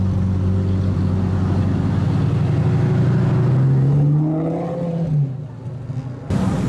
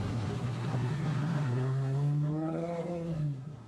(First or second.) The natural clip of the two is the first